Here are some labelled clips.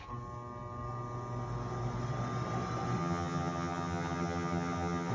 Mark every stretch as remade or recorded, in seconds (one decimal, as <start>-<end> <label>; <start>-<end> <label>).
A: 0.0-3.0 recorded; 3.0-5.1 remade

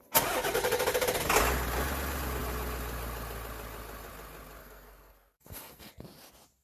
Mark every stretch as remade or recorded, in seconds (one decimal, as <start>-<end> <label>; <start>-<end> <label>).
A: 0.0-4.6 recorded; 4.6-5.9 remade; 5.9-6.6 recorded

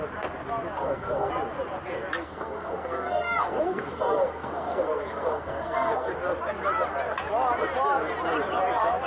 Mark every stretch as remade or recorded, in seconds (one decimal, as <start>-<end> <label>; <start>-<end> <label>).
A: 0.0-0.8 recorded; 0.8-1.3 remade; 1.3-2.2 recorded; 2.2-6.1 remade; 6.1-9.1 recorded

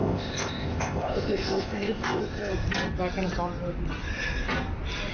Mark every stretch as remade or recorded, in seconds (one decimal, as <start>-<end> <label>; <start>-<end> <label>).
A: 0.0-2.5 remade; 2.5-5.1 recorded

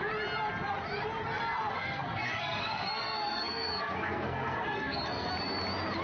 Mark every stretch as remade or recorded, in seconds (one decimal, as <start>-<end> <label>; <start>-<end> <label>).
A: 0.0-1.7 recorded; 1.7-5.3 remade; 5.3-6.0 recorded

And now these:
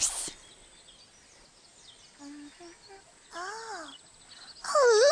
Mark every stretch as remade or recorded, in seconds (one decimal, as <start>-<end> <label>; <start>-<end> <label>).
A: 0.0-5.1 recorded